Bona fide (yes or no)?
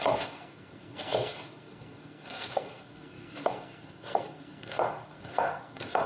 no